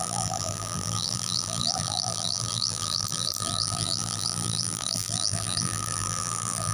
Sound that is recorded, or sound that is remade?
remade